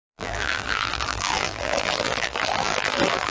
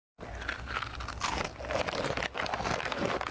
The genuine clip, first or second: second